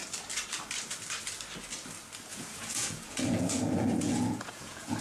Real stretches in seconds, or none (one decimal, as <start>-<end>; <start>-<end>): 0.0-2.3